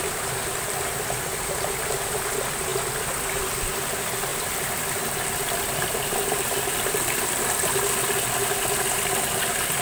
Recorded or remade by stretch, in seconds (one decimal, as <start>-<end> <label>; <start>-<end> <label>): 0.0-2.2 remade; 2.2-4.3 recorded; 4.3-7.3 remade; 7.3-9.8 recorded